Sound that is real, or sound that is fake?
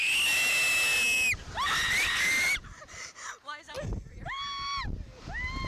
real